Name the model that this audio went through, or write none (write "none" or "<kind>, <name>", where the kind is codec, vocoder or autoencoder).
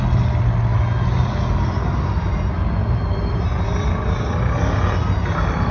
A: none